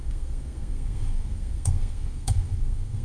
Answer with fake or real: fake